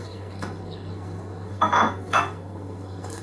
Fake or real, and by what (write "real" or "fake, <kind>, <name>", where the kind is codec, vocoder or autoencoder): fake, codec, SNAC